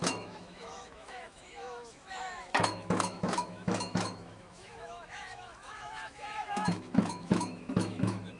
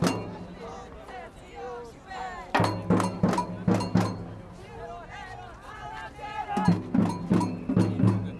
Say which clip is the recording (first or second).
second